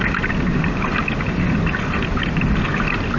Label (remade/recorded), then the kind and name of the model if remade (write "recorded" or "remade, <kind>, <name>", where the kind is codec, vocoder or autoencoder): recorded